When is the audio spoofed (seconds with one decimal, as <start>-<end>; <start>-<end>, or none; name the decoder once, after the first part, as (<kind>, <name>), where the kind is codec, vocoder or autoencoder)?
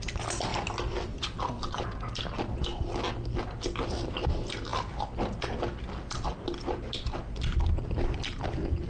none